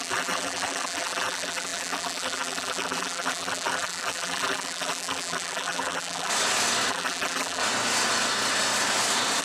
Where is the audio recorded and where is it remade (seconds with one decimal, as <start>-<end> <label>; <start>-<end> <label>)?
0.0-6.3 remade; 6.3-6.9 recorded; 6.9-7.6 remade; 7.6-9.4 recorded